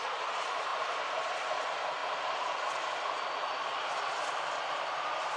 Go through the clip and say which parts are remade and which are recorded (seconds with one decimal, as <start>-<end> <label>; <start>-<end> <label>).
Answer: 0.0-5.4 recorded